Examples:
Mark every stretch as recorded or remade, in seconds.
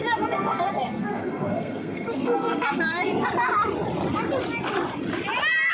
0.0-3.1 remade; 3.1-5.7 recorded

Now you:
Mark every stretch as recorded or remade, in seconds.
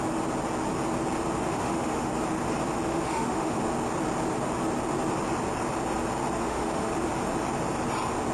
0.0-1.5 recorded; 1.5-2.1 remade; 2.1-2.9 recorded; 2.9-3.6 remade; 3.6-6.4 recorded; 6.4-6.9 remade; 6.9-8.3 recorded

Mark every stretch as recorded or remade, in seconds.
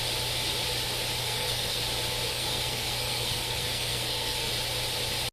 0.0-1.2 recorded; 1.2-1.8 remade; 1.8-2.3 recorded; 2.3-4.5 remade; 4.5-5.3 recorded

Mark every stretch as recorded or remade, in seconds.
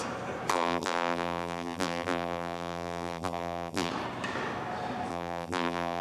0.0-0.5 recorded; 0.5-3.9 remade; 3.9-5.1 recorded; 5.1-6.0 remade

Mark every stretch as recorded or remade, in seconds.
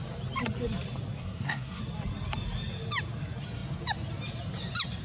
0.0-1.2 recorded; 1.2-1.8 remade; 1.8-5.0 recorded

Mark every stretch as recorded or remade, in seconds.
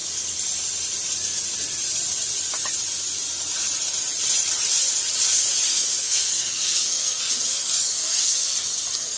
0.0-5.7 recorded; 5.7-9.2 remade